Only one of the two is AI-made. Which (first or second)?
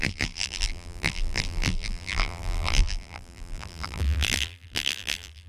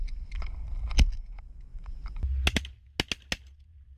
first